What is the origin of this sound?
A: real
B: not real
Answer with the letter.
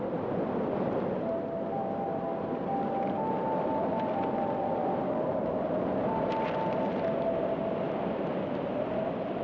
A